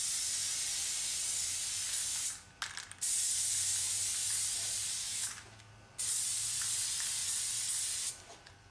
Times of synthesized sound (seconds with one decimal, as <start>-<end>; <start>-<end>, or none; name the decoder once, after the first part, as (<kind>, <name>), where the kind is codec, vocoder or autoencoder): 5.0-5.7 (autoencoder, DAC-VAE)